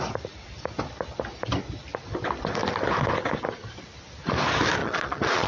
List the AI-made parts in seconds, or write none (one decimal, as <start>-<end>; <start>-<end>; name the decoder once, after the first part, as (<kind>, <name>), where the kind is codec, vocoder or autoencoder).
4.8-5.5 (vocoder, Vocos)